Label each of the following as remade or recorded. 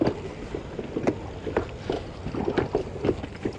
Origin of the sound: recorded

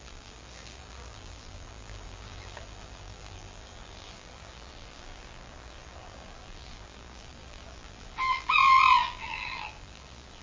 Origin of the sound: remade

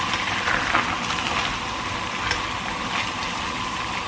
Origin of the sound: recorded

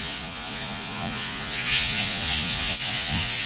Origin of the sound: remade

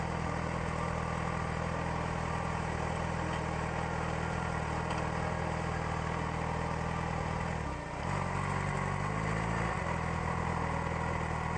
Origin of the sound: recorded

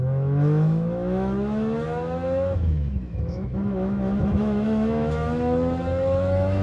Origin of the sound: remade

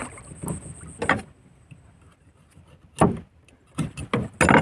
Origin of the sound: recorded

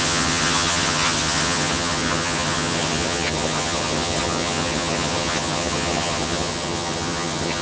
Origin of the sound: remade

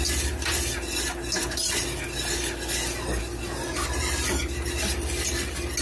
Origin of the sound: recorded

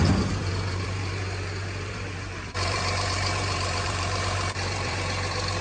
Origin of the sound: remade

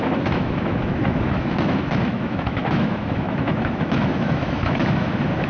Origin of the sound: remade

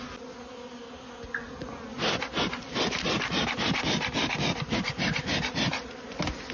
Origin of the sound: recorded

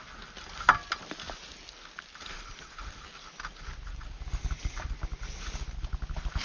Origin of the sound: recorded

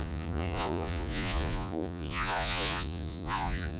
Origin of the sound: remade